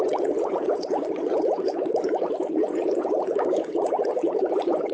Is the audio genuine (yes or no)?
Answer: no